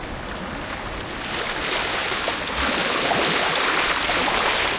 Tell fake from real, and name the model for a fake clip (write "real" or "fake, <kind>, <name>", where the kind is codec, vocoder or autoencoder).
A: real